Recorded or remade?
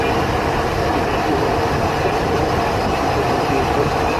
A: recorded